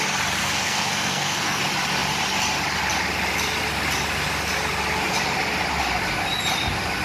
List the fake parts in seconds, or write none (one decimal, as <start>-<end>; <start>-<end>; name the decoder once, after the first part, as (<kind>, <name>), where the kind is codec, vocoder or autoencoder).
0.4-1.6 (codec, SNAC)